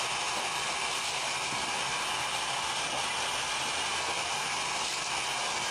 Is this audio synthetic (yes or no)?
no